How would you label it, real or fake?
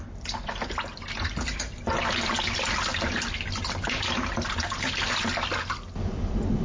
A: real